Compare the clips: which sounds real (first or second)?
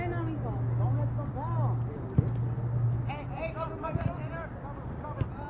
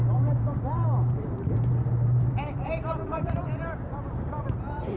first